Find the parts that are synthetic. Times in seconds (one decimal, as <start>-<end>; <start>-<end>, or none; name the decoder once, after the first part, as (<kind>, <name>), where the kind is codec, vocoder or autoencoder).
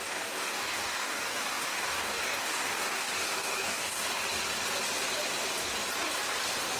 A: 0.0-4.2 (codec, DAC)